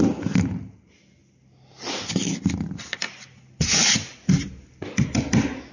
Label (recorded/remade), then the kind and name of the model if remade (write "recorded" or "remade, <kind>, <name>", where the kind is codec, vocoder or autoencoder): recorded